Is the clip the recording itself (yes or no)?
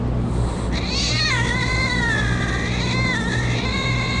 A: yes